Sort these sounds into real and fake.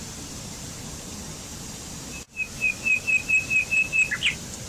real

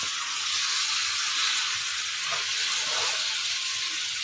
real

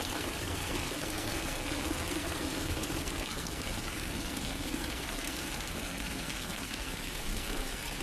fake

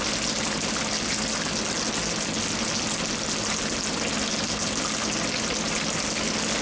real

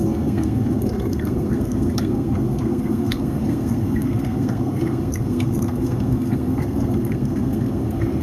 fake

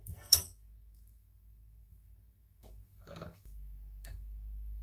fake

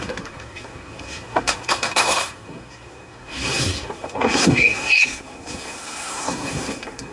fake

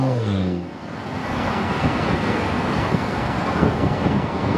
fake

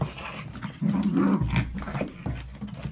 real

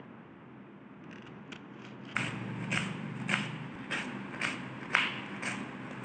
real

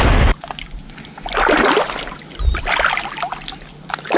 real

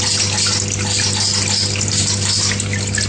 real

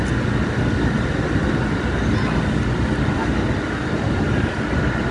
real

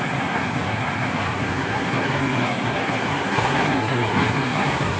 fake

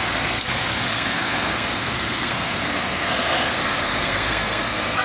fake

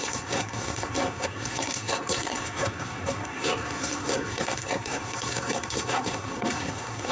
fake